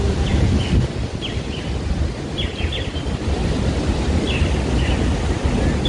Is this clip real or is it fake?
real